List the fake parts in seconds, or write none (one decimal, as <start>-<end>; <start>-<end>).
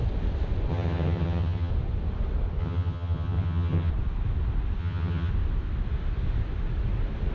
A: 0.7-1.7; 2.6-3.9; 4.8-5.3